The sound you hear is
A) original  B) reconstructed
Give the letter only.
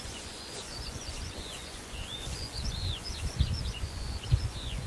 B